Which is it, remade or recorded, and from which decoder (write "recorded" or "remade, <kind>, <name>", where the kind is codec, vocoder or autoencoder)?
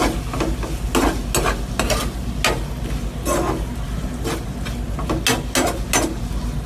recorded